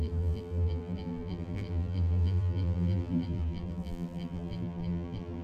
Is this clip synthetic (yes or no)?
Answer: yes